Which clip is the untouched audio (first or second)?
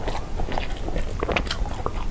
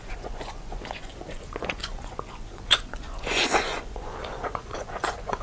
first